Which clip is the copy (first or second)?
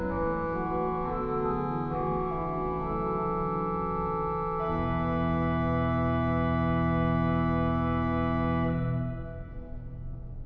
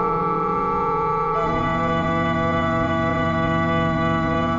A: second